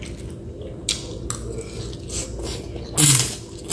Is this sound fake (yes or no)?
no